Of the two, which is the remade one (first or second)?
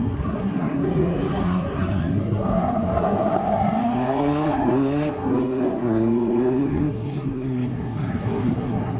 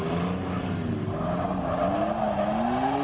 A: first